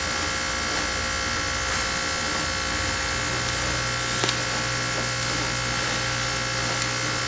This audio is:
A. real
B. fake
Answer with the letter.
A